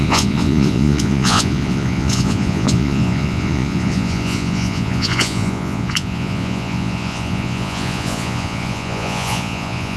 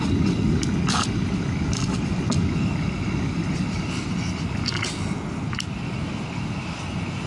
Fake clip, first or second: first